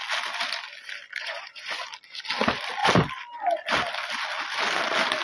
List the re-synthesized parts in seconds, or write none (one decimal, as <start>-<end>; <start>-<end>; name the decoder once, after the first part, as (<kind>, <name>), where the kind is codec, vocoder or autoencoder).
1.2-1.8 (vocoder, Vocos)